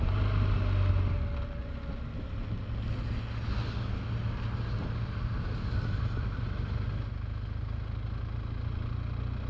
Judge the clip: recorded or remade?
recorded